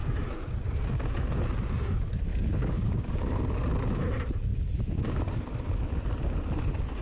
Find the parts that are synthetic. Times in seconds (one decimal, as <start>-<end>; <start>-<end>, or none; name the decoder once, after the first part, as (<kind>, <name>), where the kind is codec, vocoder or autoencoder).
2.3-3.2 (codec, DAC); 4.5-5.4

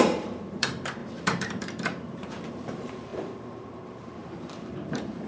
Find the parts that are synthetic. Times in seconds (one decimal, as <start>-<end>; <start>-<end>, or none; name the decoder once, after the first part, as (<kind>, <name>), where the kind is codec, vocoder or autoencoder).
0.0-5.3 (vocoder, BigVGAN v2)

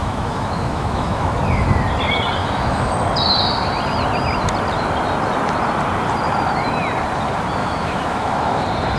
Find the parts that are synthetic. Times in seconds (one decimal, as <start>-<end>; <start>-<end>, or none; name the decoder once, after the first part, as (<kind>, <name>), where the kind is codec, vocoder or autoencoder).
0.0-1.4 (autoencoder, DAC-VAE); 2.4-2.9; 7.6-8.6

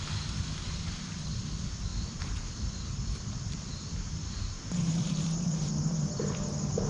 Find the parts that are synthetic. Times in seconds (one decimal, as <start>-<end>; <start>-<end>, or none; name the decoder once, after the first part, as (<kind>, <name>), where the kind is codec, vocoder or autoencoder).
1.9-6.0 (vocoder, BigVGAN v2)

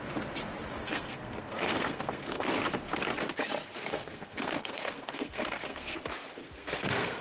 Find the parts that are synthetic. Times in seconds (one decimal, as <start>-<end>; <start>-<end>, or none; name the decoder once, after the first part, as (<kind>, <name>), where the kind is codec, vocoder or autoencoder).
0.8-2.5 (codec, SNAC); 3.9-6.0; 6.4-7.2